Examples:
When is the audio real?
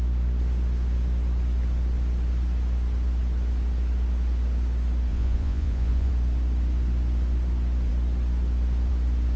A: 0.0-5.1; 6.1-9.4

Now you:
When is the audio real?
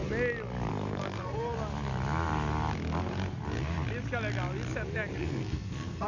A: 0.0-0.7; 1.5-5.2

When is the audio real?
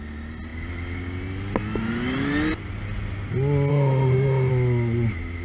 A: 0.0-3.7; 4.5-5.4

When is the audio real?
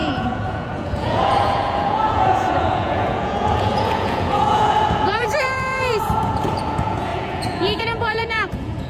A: none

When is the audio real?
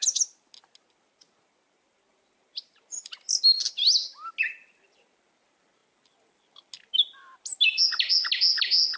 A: 0.0-9.0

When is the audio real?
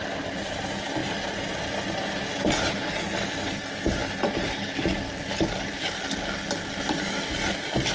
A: 0.0-7.9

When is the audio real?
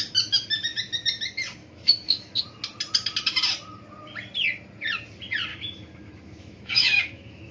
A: 0.0-1.6; 2.4-5.5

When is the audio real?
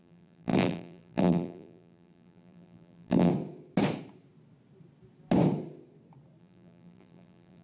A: 3.3-6.4